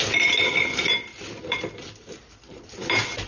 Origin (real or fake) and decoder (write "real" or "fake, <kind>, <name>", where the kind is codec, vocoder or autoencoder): fake, vocoder, BigVGAN v2